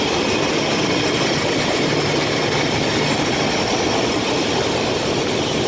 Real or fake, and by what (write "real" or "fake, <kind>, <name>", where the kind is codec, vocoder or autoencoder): real